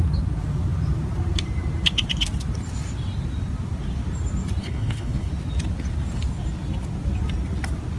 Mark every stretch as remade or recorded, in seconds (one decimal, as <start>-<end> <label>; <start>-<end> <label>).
0.0-4.6 recorded; 4.6-5.3 remade; 5.3-8.0 recorded